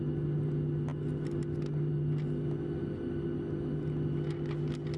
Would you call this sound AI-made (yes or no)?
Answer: no